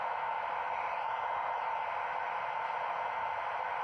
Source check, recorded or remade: recorded